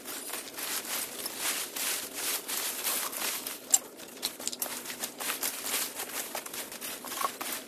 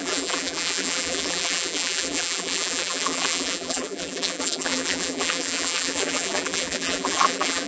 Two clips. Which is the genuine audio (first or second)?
first